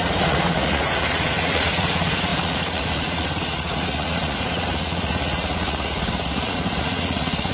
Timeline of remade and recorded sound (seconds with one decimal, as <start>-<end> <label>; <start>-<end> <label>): 0.0-7.5 remade